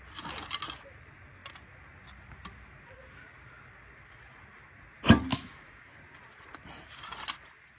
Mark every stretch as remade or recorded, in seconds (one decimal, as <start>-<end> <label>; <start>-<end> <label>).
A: 0.0-5.3 recorded; 5.3-5.9 remade; 5.9-7.8 recorded